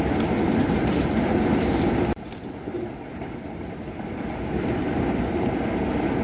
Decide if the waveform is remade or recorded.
recorded